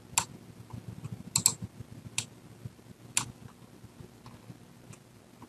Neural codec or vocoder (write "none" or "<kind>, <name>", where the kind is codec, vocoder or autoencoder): none